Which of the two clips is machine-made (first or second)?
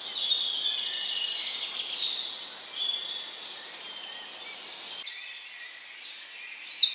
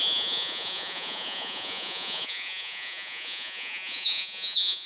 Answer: second